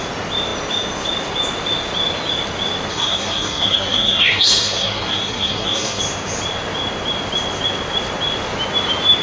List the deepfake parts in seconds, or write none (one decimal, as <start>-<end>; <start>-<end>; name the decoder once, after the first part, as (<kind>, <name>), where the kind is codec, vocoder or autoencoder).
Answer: 2.9-6.0 (codec, SNAC)